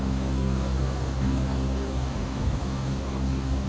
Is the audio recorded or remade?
remade